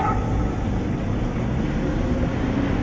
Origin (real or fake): real